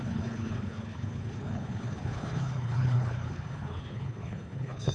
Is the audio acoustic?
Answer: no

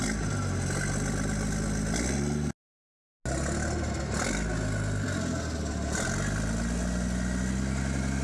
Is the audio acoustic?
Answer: yes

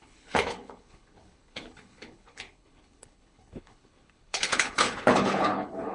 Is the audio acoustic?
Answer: no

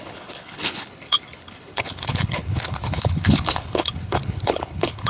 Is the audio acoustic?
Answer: no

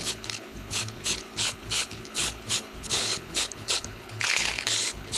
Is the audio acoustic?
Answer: no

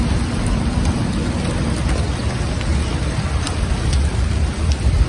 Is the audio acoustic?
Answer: yes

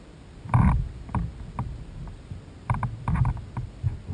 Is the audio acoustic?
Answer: yes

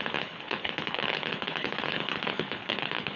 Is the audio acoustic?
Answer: no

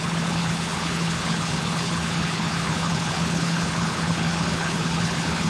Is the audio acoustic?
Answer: no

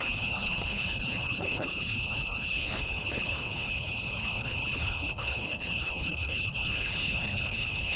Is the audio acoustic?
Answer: no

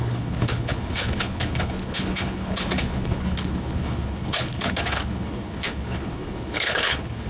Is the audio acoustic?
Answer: no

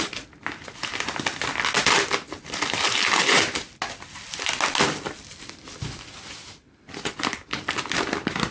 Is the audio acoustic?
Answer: yes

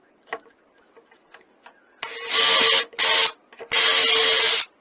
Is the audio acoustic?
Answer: yes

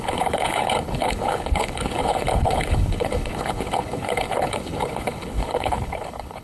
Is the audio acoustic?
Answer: no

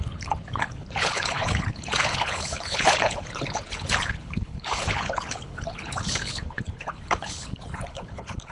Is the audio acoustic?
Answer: no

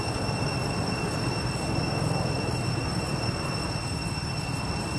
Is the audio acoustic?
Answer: yes